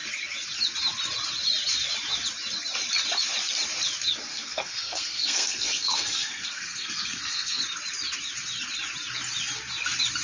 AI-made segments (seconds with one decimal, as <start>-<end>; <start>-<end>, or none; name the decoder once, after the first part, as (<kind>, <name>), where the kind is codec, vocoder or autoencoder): 4.3-7.6 (codec, SNAC)